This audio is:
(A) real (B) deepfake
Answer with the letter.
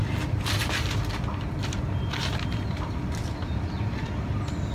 A